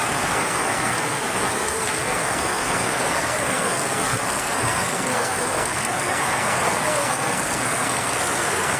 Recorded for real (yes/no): no